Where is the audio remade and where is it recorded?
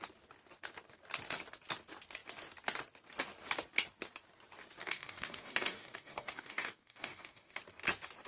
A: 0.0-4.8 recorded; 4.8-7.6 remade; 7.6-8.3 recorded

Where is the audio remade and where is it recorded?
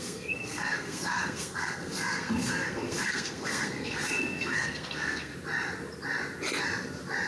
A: 0.0-5.3 remade; 5.3-7.3 recorded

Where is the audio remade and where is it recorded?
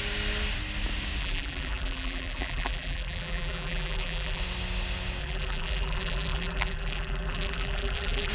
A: 0.0-1.2 recorded; 1.2-4.4 remade; 4.4-5.2 recorded; 5.2-8.3 remade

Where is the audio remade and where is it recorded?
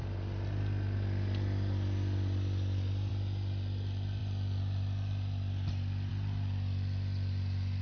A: 0.0-7.8 recorded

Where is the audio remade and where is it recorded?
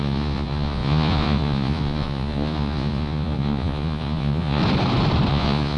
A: 0.0-4.6 remade; 4.6-5.3 recorded; 5.3-5.8 remade